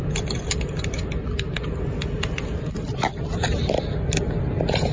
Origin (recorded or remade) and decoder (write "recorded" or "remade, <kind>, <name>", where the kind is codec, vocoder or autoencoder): recorded